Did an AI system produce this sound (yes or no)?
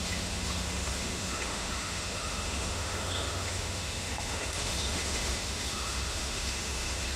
yes